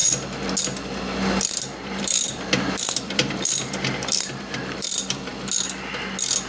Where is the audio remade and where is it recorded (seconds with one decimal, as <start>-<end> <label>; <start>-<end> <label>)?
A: 0.0-1.9 recorded; 1.9-5.3 remade; 5.3-6.5 recorded